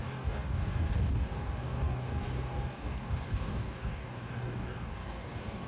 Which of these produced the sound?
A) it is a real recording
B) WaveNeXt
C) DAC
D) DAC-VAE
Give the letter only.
C